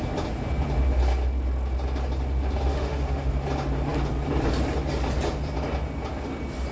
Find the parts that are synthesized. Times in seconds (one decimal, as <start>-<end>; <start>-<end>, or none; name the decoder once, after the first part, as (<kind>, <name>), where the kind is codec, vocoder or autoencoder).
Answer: 2.7-3.3 (autoencoder, DAC-VAE)